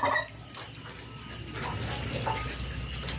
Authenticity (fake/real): real